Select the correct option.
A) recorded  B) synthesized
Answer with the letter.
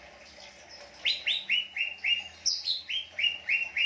A